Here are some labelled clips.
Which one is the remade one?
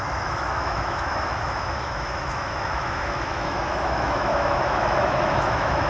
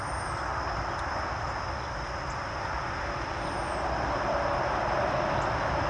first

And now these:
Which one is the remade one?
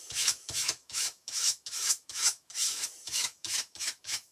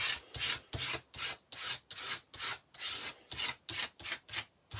first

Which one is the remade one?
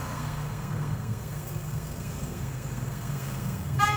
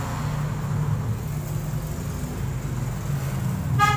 first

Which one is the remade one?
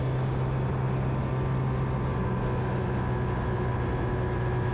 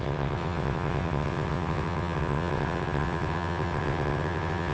second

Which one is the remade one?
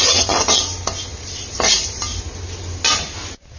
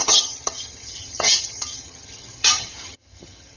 second